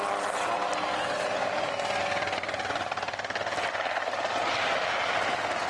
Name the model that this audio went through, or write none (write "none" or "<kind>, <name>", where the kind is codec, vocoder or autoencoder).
none